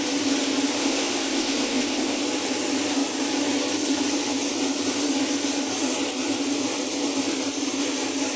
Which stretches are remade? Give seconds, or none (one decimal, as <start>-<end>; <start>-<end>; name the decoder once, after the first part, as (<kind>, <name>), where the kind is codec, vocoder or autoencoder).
0.8-2.2 (codec, ZipCodec)

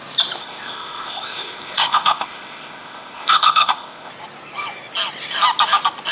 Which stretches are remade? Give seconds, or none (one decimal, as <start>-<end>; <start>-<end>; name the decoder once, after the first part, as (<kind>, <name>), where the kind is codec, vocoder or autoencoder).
0.4-4.1 (codec, ZipCodec)

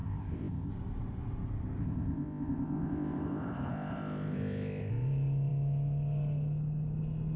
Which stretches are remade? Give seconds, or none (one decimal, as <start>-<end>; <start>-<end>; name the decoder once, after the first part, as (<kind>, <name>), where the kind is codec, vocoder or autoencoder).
0.0-0.7 (codec, ZipCodec); 1.8-4.9

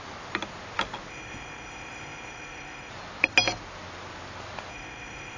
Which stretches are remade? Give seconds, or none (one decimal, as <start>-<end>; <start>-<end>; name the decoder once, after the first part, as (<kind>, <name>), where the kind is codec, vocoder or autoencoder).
1.1-2.9 (codec, ZipCodec); 4.7-5.4

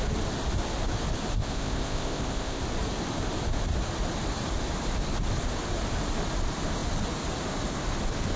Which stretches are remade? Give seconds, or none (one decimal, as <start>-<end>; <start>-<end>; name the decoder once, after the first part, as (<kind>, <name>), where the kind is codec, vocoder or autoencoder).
1.4-2.6 (codec, ZipCodec)